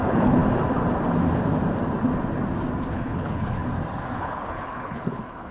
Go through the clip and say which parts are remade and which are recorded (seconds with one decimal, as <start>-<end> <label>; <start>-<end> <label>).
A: 0.0-0.4 remade; 0.4-2.9 recorded; 2.9-3.6 remade; 3.6-4.2 recorded; 4.2-5.5 remade